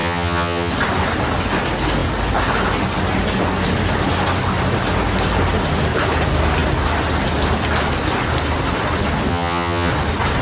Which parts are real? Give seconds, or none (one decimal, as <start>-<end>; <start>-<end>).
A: 0.7-9.3; 9.9-10.4